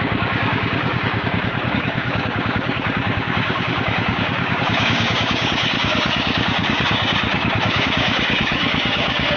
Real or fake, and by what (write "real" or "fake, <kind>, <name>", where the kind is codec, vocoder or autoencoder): fake, codec, DAC